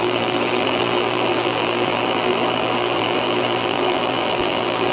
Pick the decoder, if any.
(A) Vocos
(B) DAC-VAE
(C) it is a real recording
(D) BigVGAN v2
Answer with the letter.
D